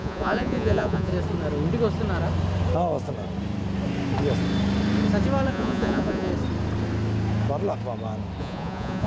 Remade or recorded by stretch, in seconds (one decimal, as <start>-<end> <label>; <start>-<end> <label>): 0.0-1.1 remade; 1.1-5.5 recorded; 5.5-6.3 remade; 6.3-8.4 recorded; 8.4-9.1 remade

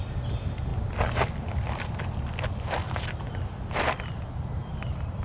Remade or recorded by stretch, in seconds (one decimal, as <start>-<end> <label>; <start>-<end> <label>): 0.0-5.2 recorded

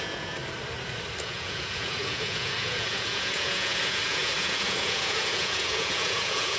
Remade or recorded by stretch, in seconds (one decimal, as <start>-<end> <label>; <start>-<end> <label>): 0.0-0.4 remade; 0.4-1.2 recorded; 1.2-6.6 remade

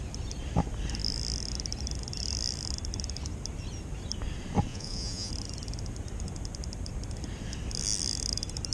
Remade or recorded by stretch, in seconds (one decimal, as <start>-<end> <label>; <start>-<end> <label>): 0.0-4.7 recorded; 4.7-5.3 remade; 5.3-8.7 recorded

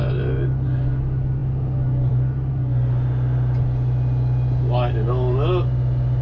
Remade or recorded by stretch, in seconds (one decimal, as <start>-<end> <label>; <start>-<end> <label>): 0.0-6.2 recorded

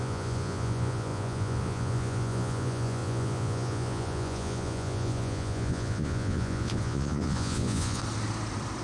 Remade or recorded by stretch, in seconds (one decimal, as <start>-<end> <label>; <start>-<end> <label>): 0.0-8.0 remade; 8.0-8.8 recorded

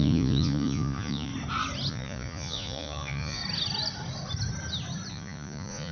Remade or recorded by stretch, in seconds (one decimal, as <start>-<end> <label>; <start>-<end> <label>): 0.0-1.3 remade; 1.3-1.9 recorded; 1.9-3.4 remade; 3.4-5.1 recorded; 5.1-5.9 remade